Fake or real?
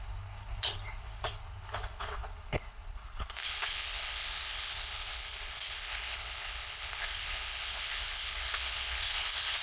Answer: fake